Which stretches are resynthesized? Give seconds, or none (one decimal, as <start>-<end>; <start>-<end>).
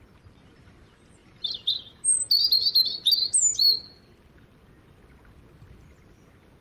none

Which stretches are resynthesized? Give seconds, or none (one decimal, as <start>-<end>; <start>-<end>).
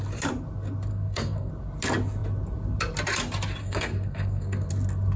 0.9-1.5; 3.6-4.7